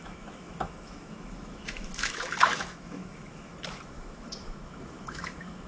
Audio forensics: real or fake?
fake